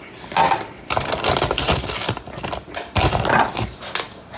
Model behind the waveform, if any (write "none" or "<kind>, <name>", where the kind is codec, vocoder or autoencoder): none